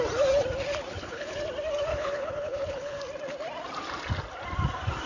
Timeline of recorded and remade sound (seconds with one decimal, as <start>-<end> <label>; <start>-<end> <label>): 0.0-0.9 recorded; 0.9-1.4 remade; 1.4-1.9 recorded; 1.9-3.0 remade; 3.0-5.1 recorded